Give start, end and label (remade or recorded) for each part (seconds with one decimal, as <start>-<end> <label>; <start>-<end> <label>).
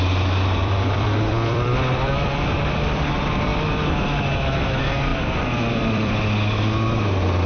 0.0-0.6 recorded; 0.6-3.1 remade; 3.1-5.1 recorded; 5.1-6.1 remade; 6.1-7.5 recorded